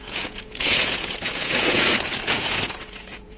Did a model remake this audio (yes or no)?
yes